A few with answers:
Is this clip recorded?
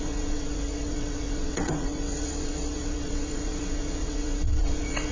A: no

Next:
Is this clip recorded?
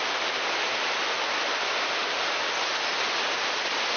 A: yes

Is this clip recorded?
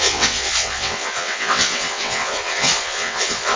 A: no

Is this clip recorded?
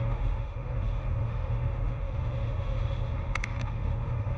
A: no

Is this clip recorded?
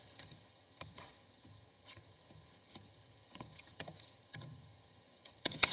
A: no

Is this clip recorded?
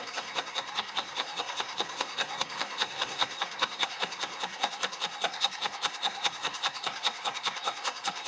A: no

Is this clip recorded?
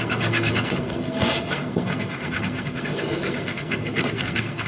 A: no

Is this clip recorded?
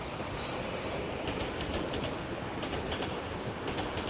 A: no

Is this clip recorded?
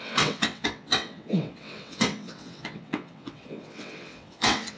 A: no